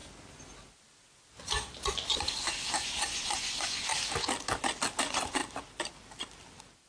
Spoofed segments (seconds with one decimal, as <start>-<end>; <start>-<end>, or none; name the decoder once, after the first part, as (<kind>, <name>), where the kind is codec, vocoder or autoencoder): 2.1-3.9 (vocoder, Vocos); 5.0-5.4